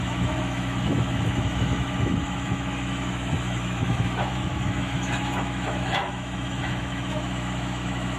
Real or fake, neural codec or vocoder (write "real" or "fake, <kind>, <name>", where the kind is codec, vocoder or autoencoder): fake, autoencoder, DAC-VAE